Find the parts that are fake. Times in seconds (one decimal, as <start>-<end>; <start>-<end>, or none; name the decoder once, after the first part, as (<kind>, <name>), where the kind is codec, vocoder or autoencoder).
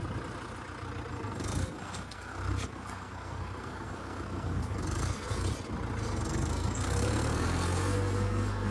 1.1-5.5 (codec, SNAC); 6.0-8.7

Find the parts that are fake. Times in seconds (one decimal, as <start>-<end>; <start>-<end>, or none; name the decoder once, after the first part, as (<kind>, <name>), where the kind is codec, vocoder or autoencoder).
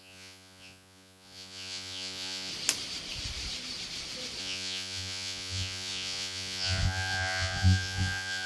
0.0-2.5 (vocoder, Vocos); 4.4-8.5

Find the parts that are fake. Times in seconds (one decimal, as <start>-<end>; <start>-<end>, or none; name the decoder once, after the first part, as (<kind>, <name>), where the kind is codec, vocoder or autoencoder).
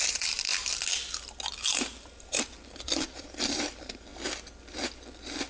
0.0-0.5 (vocoder, BigVGAN v2); 1.7-4.1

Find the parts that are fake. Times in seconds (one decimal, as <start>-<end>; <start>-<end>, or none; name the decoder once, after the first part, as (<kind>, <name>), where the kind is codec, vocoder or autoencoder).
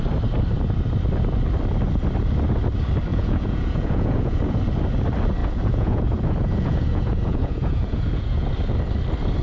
3.1-4.6 (vocoder, Vocos); 5.4-8.5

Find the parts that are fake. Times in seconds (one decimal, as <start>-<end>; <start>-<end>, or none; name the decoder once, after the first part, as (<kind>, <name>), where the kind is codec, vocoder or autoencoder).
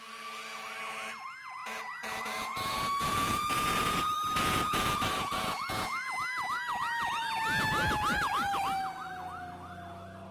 1.6-6.1 (vocoder, Vocos); 6.8-7.3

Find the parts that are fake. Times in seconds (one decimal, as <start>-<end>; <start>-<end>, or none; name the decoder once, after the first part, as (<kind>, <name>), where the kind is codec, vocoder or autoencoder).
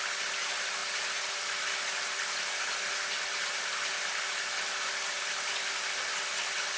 none